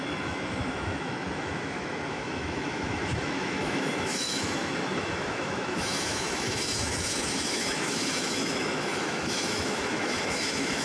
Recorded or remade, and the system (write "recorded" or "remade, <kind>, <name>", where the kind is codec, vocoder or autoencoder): remade, autoencoder, DAC-VAE